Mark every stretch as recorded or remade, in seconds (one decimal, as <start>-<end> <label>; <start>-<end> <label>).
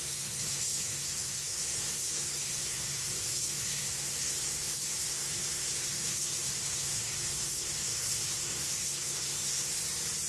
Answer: 0.0-9.8 remade; 9.8-10.3 recorded